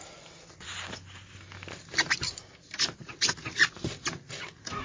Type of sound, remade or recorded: recorded